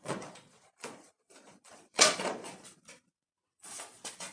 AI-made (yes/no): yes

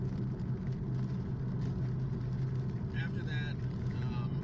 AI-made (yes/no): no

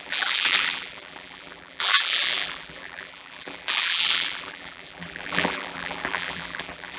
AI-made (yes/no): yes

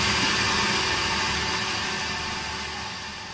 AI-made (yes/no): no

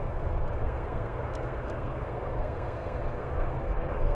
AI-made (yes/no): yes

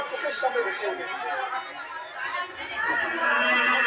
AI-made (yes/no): no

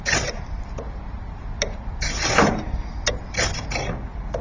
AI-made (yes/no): no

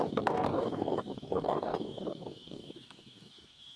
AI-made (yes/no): yes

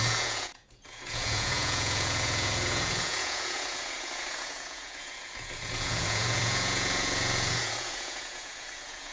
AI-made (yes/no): yes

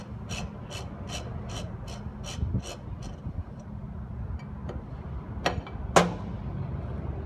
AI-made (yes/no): no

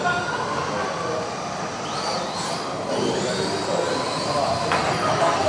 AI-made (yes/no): no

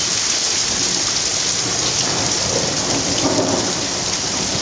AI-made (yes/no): no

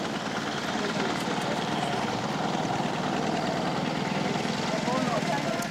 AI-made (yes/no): no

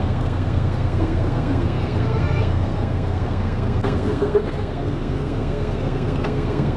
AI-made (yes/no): yes